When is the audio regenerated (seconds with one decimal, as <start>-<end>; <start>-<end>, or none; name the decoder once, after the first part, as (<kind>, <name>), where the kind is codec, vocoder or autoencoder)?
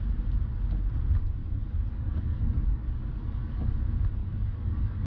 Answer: 1.4-3.7 (codec, DAC); 4.2-5.1